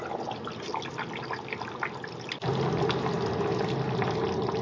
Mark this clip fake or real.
real